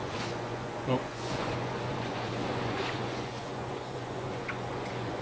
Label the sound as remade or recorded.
remade